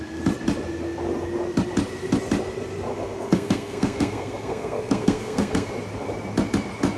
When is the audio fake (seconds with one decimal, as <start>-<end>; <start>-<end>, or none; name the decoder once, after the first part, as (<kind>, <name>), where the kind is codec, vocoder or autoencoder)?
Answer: 2.9-5.7 (codec, SNAC)